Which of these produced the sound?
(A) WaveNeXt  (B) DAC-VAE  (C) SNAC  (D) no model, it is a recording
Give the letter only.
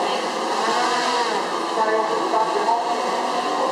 D